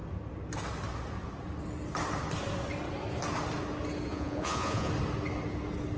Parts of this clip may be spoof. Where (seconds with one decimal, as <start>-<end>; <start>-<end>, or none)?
4.1-4.9